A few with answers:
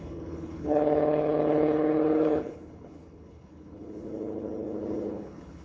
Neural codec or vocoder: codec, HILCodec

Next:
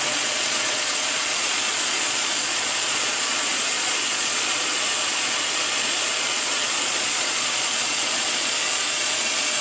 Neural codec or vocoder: vocoder, Vocos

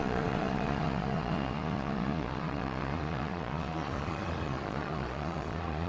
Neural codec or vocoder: vocoder, Vocos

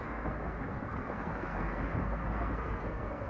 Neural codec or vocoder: codec, SNAC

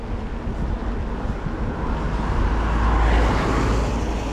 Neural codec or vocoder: none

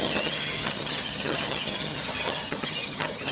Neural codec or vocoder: vocoder, HiFi-GAN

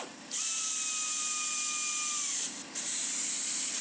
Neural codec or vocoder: none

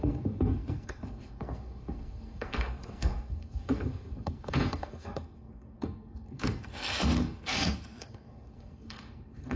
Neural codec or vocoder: codec, SNAC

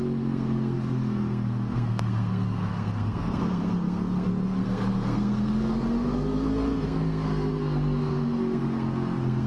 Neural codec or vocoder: codec, SNAC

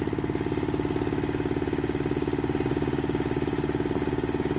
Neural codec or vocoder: none